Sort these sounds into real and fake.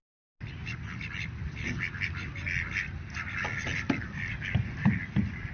real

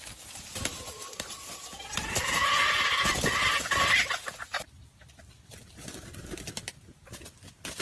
real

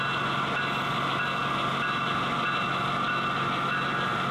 real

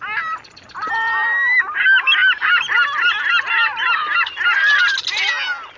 real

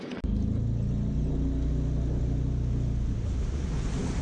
real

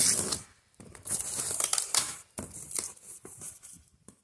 fake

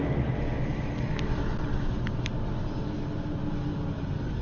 real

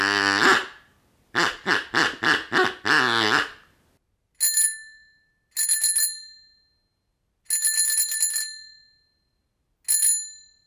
real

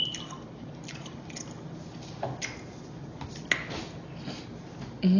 real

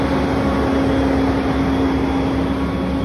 real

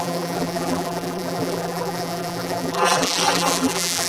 fake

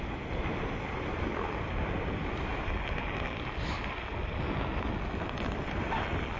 real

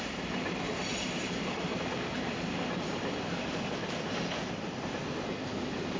fake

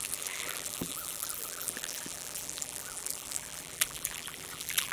fake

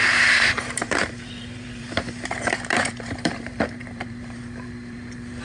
fake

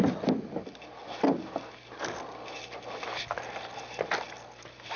real